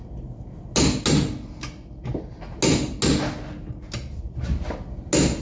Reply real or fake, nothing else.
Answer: real